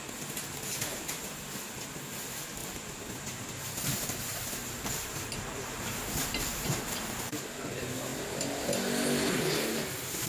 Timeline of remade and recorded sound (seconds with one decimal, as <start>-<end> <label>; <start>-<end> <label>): 0.0-0.9 recorded; 0.9-1.4 remade; 1.4-2.6 recorded; 2.6-7.4 remade; 7.4-10.3 recorded